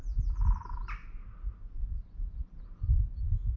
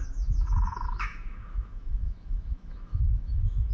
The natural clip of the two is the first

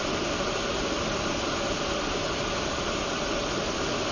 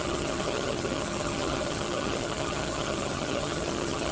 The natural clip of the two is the first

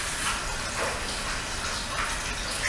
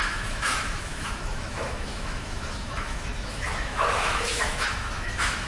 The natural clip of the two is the first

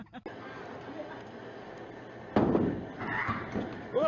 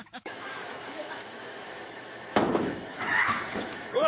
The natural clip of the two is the first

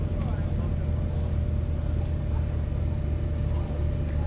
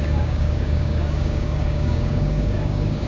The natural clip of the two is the first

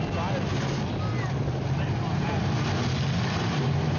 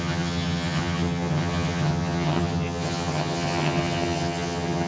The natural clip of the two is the first